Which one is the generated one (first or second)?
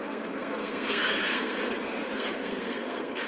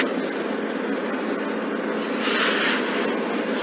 first